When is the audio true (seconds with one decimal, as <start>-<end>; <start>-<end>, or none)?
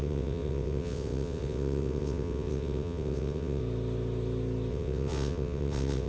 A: 3.6-4.7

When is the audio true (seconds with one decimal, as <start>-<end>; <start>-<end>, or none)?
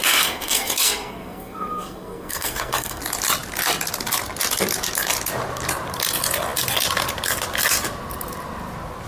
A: 3.0-9.1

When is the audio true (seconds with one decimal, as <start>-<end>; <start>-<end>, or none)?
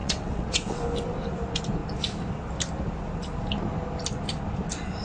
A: 0.8-5.0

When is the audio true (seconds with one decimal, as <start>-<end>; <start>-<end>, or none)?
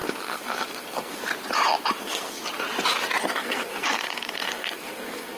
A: 1.3-2.0; 2.4-3.3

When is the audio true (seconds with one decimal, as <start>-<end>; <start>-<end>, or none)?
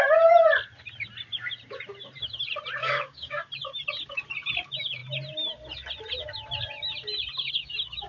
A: 0.0-2.8; 3.4-8.1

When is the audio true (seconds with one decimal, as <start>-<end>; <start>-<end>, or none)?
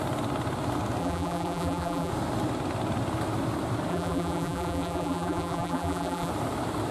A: 0.0-1.0; 2.1-3.9; 6.3-6.9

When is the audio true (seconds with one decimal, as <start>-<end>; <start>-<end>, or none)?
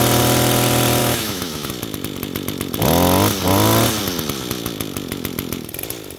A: 0.0-1.0; 1.7-6.2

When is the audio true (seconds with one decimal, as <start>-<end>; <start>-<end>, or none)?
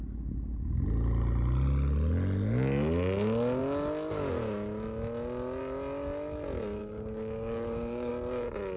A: 0.0-6.8; 8.1-8.8